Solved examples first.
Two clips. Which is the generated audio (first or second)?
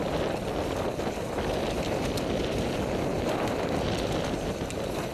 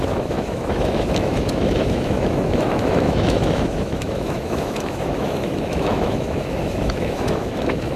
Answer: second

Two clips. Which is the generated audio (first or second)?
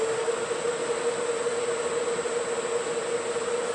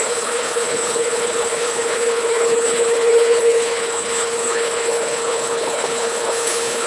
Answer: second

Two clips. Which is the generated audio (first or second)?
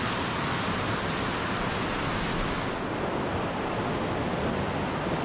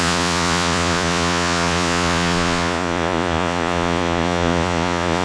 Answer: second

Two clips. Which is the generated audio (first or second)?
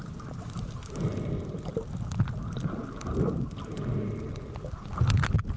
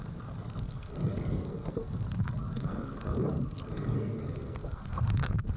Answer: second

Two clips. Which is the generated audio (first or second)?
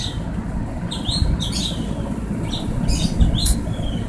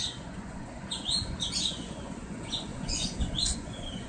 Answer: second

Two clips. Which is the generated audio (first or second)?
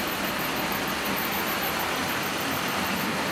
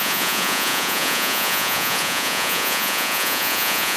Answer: second